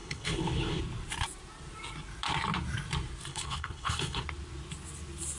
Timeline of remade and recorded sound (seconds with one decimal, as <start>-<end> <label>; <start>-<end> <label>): 0.0-0.8 remade; 0.8-3.3 recorded; 3.3-4.2 remade; 4.2-5.4 recorded